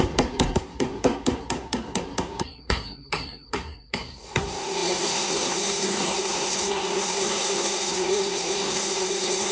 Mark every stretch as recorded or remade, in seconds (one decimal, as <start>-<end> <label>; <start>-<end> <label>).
0.0-9.5 remade